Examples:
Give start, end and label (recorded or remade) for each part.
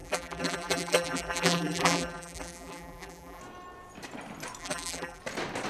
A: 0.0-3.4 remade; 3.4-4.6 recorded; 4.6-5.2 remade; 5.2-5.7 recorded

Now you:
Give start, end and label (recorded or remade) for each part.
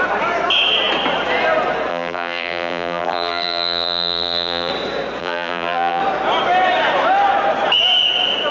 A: 0.0-1.9 recorded; 1.9-4.7 remade; 4.7-5.2 recorded; 5.2-6.0 remade; 6.0-8.5 recorded